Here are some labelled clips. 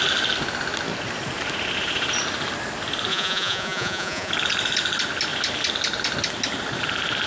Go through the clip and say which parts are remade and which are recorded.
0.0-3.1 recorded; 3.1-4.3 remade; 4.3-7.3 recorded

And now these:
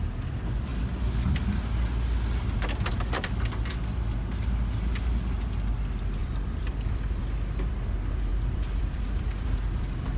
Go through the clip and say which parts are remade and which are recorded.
0.0-6.2 recorded; 6.2-7.2 remade; 7.2-8.3 recorded; 8.3-10.2 remade

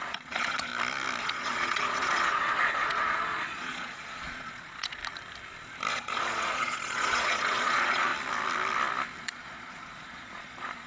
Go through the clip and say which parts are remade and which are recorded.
0.0-0.7 remade; 0.7-1.2 recorded; 1.2-5.0 remade; 5.0-5.9 recorded; 5.9-8.1 remade; 8.1-9.2 recorded; 9.2-10.9 remade